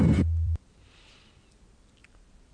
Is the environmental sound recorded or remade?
remade